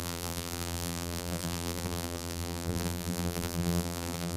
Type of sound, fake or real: fake